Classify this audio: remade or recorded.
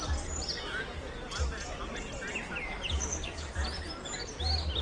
recorded